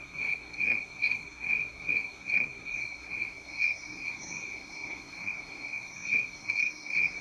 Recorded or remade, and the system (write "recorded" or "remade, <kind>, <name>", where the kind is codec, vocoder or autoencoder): remade, codec, SNAC